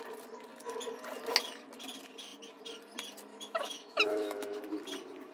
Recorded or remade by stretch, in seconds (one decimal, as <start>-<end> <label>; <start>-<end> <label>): 0.0-3.3 recorded; 3.3-4.6 remade; 4.6-5.3 recorded